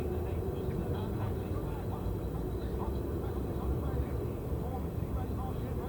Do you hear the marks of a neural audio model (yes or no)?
no